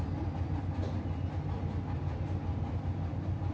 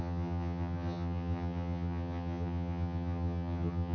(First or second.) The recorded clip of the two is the first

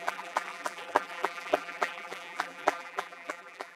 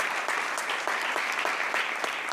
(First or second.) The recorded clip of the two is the second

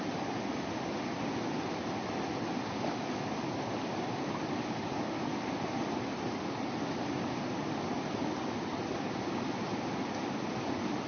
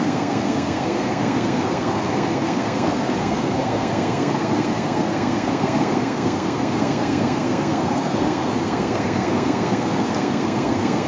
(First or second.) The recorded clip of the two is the first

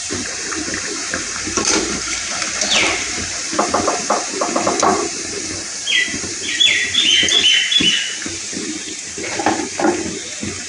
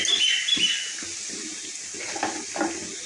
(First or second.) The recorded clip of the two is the second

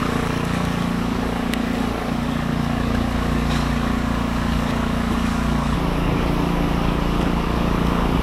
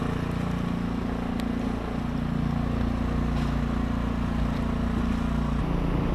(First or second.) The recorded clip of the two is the second